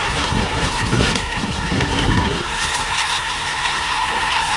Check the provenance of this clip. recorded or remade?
remade